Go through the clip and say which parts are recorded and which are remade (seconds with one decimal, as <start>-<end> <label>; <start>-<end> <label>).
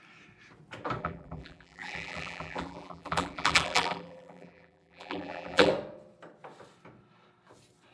0.0-1.0 recorded; 1.0-5.7 remade; 5.7-7.9 recorded